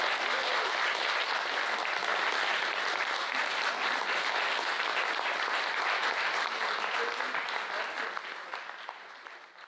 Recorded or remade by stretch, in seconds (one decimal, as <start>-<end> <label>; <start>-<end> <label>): 0.0-9.7 recorded